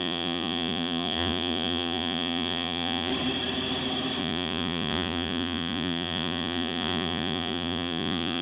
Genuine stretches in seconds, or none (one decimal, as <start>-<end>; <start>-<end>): 3.1-4.2